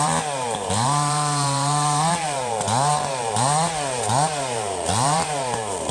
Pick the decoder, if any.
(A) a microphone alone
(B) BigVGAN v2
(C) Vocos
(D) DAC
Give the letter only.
B